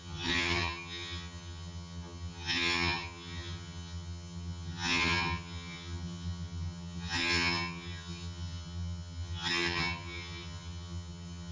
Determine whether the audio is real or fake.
fake